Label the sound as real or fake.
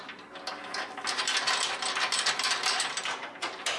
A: real